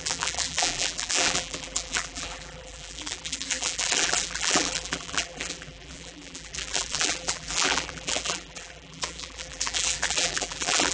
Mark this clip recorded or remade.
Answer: remade